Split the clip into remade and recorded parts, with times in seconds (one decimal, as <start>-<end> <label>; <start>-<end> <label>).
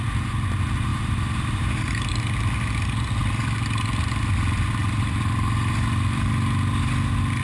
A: 0.0-0.9 recorded; 0.9-2.2 remade; 2.2-4.8 recorded; 4.8-6.3 remade; 6.3-7.4 recorded